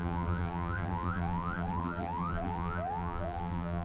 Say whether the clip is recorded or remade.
remade